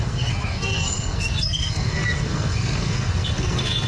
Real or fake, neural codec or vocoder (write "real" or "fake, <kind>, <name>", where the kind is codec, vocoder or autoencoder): fake, codec, SNAC